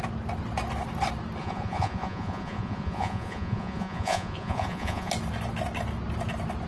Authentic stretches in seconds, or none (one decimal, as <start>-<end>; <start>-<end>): 0.0-1.4; 5.1-6.7